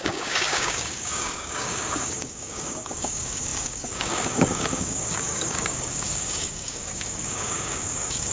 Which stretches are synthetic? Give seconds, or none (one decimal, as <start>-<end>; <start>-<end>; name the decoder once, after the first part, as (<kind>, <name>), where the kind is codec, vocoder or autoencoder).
0.0-8.3 (codec, DAC)